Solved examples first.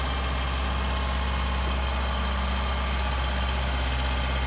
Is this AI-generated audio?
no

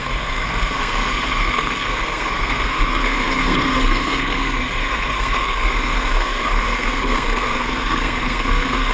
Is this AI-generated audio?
yes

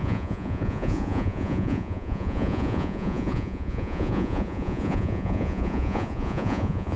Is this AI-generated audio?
yes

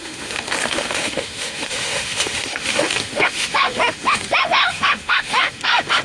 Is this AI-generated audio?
yes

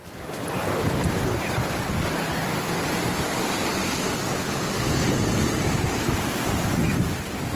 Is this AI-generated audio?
no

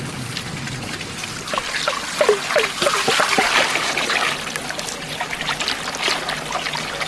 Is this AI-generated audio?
no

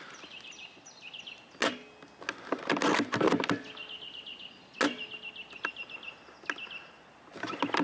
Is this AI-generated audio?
no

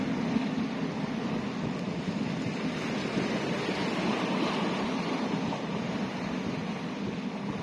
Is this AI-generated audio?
no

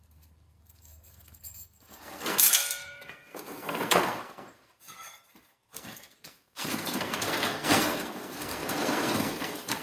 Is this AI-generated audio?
yes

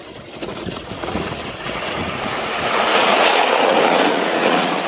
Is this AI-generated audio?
yes